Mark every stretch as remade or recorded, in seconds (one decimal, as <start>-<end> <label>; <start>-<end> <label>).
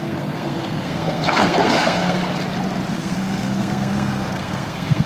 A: 0.0-2.2 remade; 2.2-2.9 recorded; 2.9-5.1 remade